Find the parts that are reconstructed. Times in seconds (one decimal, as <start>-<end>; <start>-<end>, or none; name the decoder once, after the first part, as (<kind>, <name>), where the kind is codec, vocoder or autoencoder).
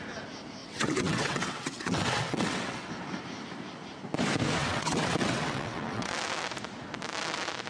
0.6-2.9 (vocoder, WaveNeXt); 4.6-6.1